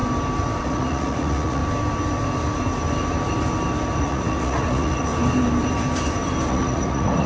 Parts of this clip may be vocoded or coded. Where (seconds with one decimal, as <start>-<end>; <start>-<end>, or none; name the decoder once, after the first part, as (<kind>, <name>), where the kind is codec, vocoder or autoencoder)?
0.6-1.6 (vocoder, Vocos); 4.0-5.1; 6.5-7.3